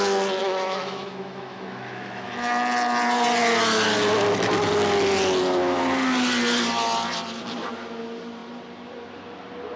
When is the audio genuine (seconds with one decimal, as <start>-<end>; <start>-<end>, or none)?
0.0-0.4; 2.6-9.8